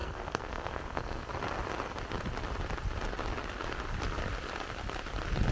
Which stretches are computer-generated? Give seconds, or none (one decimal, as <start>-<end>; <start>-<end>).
0.0-1.3